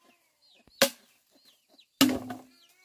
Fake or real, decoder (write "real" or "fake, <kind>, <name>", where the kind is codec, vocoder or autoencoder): real